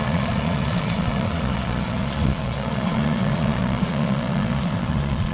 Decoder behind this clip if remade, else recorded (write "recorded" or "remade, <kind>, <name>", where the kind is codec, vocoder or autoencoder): remade, vocoder, Vocos